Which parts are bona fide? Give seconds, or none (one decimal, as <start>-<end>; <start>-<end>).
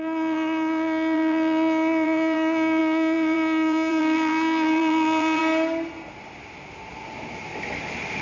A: 5.4-8.2